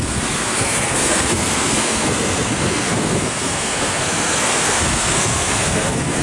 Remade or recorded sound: remade